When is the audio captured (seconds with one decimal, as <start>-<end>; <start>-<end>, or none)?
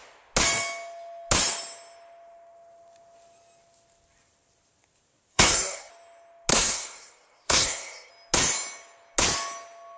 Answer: 0.0-5.3; 5.9-6.5; 8.1-10.0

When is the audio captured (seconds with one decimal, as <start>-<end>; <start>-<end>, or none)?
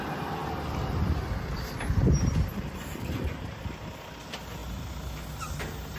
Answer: 0.0-2.5; 3.6-6.0